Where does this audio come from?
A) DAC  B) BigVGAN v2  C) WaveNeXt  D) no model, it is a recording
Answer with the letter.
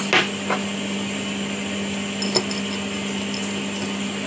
D